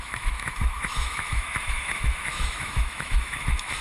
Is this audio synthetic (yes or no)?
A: yes